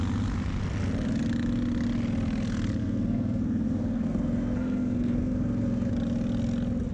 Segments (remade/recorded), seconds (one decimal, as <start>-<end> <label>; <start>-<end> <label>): 0.0-2.8 recorded; 2.8-5.9 remade; 5.9-6.9 recorded